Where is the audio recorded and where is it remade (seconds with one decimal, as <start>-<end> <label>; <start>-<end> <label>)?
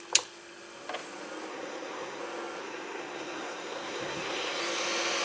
0.0-1.5 recorded; 1.5-2.2 remade; 2.2-2.6 recorded; 2.6-4.6 remade; 4.6-5.2 recorded